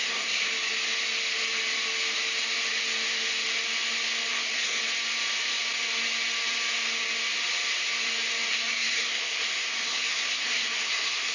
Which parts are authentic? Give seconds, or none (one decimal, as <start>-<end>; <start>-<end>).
0.5-4.3; 4.8-8.5